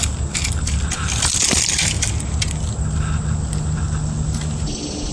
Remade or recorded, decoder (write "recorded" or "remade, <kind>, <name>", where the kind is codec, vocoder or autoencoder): recorded